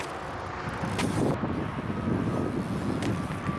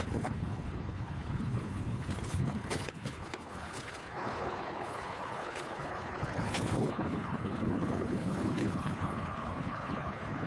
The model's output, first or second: second